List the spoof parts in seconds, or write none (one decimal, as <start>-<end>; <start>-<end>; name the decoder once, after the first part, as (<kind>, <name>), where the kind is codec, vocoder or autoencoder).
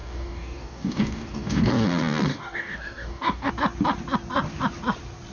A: 0.0-1.7 (codec, DAC); 2.3-3.5